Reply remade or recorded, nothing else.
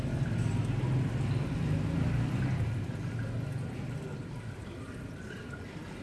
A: recorded